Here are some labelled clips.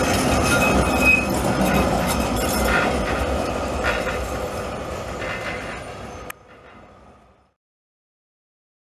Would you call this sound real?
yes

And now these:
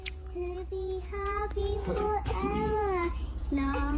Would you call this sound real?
no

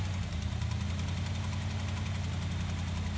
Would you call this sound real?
yes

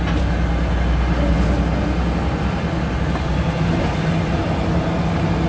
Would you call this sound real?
yes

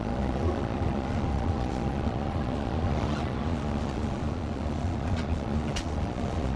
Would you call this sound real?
no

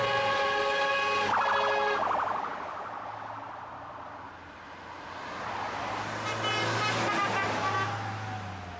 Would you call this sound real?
yes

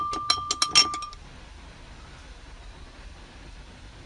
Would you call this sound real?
yes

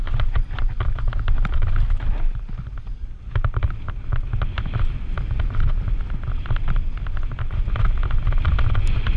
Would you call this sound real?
yes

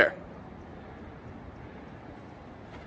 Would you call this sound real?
yes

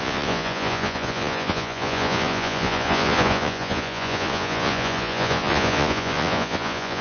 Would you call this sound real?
no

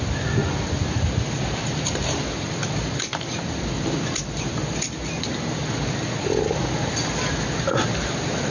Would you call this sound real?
yes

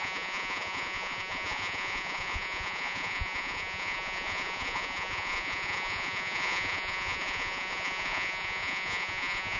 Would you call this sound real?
no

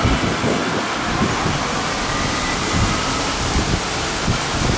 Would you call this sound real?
yes